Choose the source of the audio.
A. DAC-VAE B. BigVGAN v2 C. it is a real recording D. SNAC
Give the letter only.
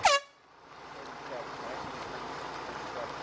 C